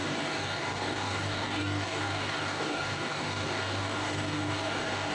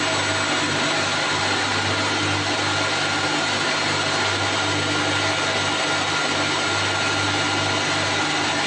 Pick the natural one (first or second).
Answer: second